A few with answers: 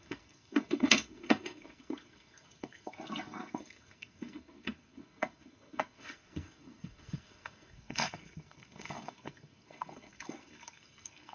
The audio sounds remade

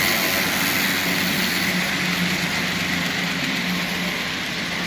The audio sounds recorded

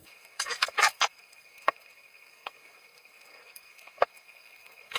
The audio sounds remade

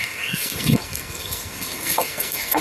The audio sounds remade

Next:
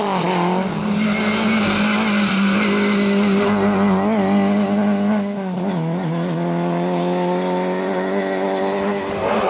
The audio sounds recorded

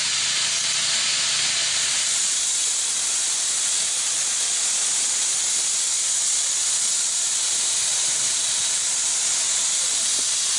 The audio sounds recorded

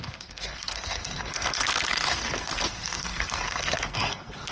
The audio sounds remade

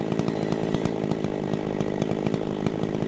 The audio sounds recorded